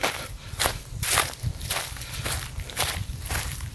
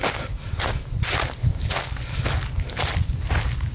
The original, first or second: second